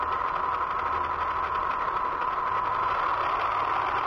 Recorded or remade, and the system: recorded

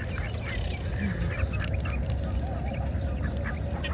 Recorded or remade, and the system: recorded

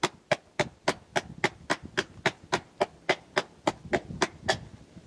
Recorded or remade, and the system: recorded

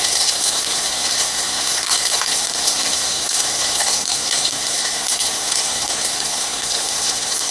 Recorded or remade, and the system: remade, codec, SNAC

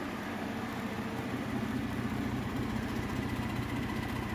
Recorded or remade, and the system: recorded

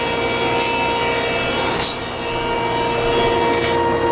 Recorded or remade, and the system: recorded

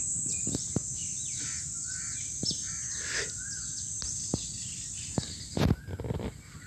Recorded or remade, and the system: recorded